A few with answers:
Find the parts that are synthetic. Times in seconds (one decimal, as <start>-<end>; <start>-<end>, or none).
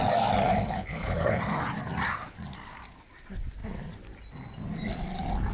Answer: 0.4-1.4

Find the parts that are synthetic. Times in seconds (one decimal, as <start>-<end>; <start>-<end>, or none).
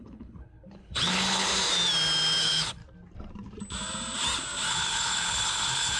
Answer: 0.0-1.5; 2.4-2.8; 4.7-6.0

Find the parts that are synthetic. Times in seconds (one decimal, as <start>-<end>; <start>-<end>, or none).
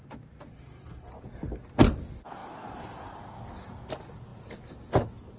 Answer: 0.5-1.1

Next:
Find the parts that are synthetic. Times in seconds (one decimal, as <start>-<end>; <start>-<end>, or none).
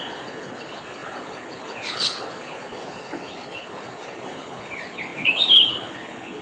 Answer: 0.0-6.4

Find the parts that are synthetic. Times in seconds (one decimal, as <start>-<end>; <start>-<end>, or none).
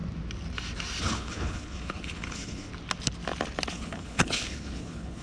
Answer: 1.0-2.7; 3.7-5.2